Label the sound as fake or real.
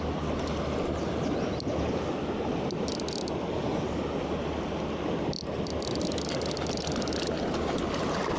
real